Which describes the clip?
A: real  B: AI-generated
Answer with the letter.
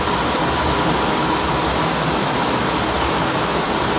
A